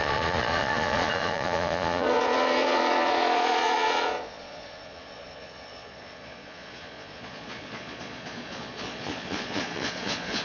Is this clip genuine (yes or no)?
no